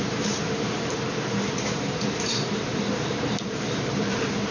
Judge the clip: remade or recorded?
remade